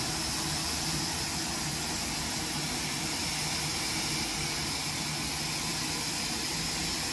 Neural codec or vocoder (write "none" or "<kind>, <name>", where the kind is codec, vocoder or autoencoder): none